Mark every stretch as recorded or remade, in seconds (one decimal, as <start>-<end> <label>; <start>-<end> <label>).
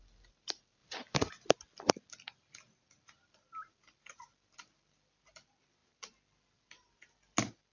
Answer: 0.0-7.7 recorded